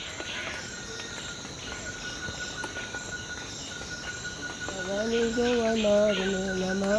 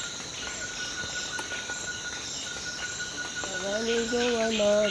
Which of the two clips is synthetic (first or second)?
second